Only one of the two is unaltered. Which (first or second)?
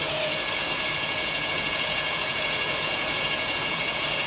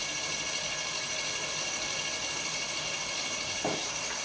second